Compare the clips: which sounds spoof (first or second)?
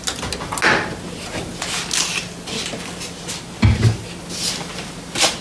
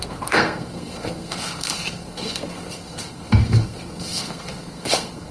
second